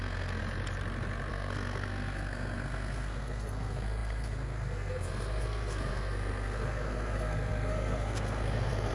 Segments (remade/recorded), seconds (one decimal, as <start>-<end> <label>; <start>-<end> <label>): 0.0-0.4 remade; 0.4-1.3 recorded; 1.3-8.9 remade